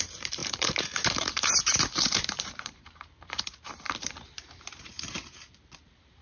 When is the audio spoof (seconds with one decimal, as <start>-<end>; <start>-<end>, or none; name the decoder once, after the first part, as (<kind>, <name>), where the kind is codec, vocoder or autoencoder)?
0.0-6.2 (vocoder, BigVGAN v2)